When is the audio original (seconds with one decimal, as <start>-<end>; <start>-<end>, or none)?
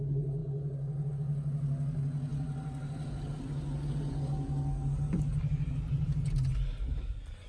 0.0-7.5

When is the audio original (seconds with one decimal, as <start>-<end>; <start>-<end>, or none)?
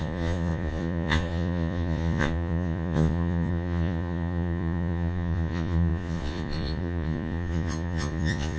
none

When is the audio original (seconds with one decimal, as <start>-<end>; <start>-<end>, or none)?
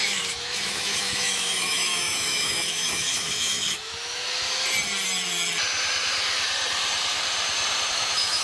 4.2-7.9